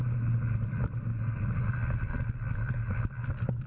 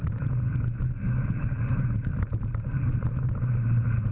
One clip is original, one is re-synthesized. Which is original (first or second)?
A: first